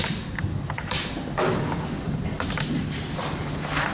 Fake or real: real